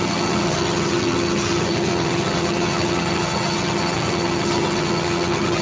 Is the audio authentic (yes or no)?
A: no